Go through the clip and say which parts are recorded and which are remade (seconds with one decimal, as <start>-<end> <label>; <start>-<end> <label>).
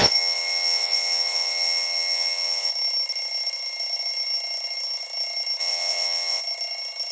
0.0-2.7 remade; 2.7-5.6 recorded; 5.6-6.4 remade; 6.4-7.1 recorded